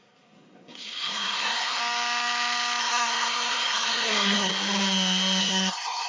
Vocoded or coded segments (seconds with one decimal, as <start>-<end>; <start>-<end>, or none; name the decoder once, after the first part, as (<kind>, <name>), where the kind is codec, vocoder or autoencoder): 0.0-1.8 (codec, SNAC); 2.8-4.5; 5.4-6.1